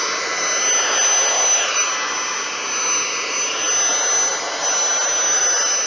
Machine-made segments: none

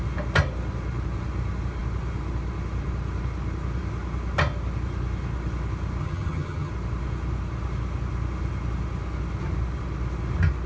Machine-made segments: 6.0-6.7 (vocoder, HiFi-GAN)